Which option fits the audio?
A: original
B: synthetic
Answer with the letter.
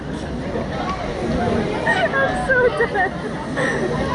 A